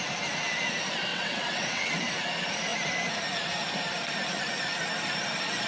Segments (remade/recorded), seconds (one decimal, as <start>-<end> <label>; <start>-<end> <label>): 0.0-1.1 recorded; 1.1-2.0 remade; 2.0-5.7 recorded